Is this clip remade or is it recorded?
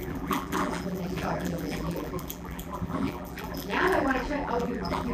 remade